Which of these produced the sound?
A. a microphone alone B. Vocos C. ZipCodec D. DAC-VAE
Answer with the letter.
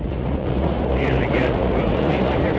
B